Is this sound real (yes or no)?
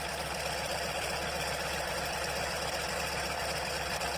yes